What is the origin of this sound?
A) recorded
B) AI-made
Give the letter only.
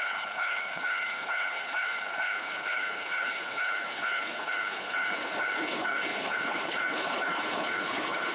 B